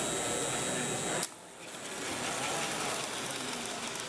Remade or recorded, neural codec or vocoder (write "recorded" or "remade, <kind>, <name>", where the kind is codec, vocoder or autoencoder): recorded